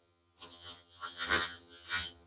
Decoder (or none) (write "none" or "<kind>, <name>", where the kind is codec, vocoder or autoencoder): vocoder, HiFi-GAN